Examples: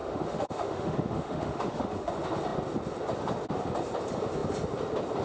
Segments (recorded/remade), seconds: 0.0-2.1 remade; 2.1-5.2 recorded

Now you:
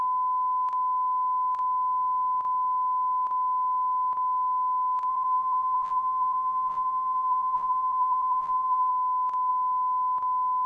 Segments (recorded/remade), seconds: 0.0-5.1 recorded; 5.1-8.9 remade; 8.9-10.7 recorded

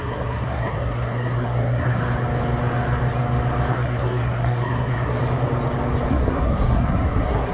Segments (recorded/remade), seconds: 0.0-2.0 remade; 2.0-3.7 recorded; 3.7-5.2 remade; 5.2-6.1 recorded; 6.1-7.5 remade

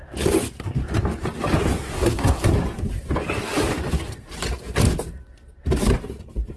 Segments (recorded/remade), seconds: 0.0-1.9 recorded; 1.9-2.5 remade; 2.5-6.6 recorded